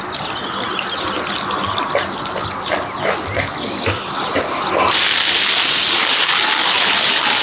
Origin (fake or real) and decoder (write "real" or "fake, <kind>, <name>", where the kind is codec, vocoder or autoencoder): real